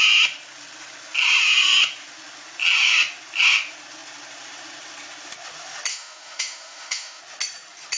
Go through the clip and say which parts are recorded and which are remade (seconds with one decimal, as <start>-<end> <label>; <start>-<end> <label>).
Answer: 0.0-5.9 recorded; 5.9-7.2 remade; 7.2-8.0 recorded